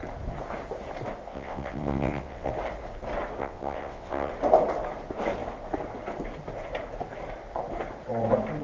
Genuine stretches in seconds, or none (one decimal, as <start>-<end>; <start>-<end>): 0.0-1.3; 2.5-3.4; 4.3-8.6